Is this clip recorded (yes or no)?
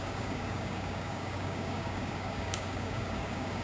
no